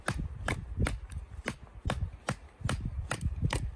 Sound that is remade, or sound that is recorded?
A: recorded